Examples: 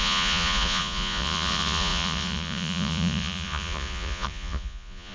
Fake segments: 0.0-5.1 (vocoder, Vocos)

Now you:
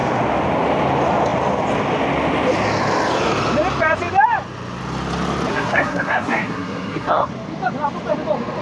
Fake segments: 5.5-7.3 (codec, SNAC)

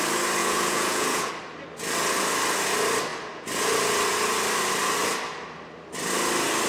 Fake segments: 0.4-1.3 (vocoder, Vocos)

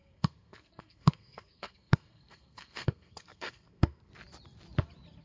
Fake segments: 0.0-4.1 (codec, SNAC)

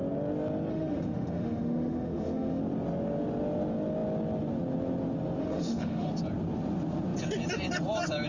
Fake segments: 0.7-2.6 (autoencoder, DAC-VAE); 5.4-6.1

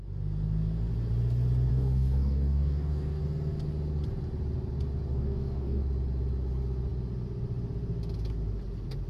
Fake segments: 1.7-3.2 (codec, DAC); 5.1-5.8

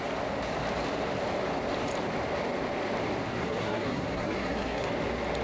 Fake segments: 3.4-4.9 (codec, SNAC)

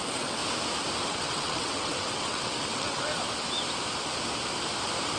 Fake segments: 0.0-0.4 (vocoder, WaveNeXt); 1.1-3.1